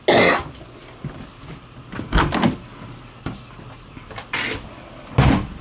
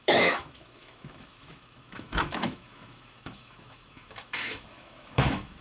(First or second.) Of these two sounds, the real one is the first